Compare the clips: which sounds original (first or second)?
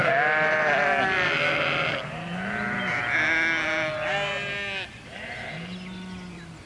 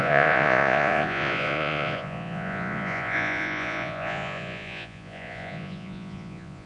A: first